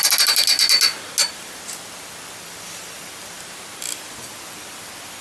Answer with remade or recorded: recorded